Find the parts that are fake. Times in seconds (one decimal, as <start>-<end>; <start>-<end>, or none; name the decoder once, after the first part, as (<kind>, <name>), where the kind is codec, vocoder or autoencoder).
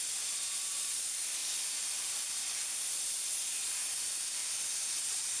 1.4-2.3 (vocoder, BigVGAN v2); 4.4-5.0